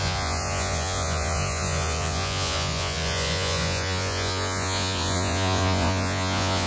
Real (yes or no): no